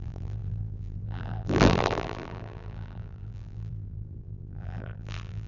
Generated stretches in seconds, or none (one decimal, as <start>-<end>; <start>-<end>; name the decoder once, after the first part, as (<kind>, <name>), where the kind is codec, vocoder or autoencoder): 0.0-5.5 (vocoder, BigVGAN v2)

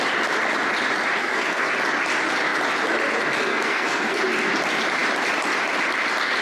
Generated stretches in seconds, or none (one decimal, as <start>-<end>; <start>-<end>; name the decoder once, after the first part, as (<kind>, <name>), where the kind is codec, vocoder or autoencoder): 1.2-1.7 (codec, SNAC); 3.5-4.2

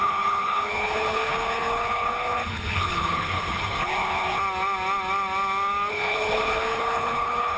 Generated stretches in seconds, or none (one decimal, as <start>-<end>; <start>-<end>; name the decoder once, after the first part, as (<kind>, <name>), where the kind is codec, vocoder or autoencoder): 0.0-4.4 (codec, HILCodec); 5.9-7.6

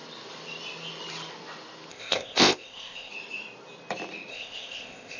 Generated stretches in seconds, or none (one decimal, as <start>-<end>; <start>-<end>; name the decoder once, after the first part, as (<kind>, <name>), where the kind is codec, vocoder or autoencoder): 1.9-3.1 (codec, ZipCodec); 4.3-5.2